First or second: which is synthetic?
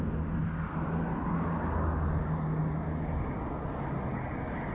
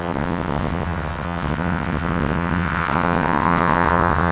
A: second